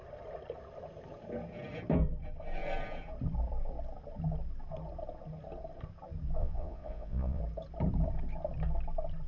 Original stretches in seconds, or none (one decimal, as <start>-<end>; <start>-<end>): 0.0-6.4; 7.4-9.3